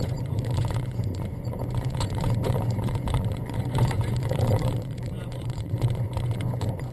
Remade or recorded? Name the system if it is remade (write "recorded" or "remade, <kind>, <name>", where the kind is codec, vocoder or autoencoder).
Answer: remade, vocoder, Vocos